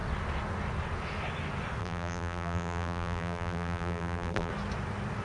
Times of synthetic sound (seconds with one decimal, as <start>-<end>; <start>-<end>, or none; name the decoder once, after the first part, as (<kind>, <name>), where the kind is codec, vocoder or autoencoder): 1.8-4.5 (vocoder, BigVGAN v2)